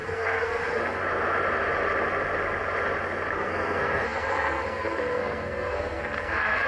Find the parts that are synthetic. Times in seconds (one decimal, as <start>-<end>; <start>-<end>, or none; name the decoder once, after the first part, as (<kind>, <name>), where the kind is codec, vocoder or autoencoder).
0.0-1.0 (codec, SNAC); 3.3-6.7